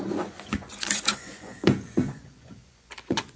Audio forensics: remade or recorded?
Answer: remade